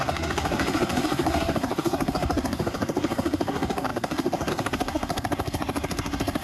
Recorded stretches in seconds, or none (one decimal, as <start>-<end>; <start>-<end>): none